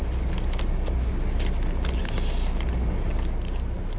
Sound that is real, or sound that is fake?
real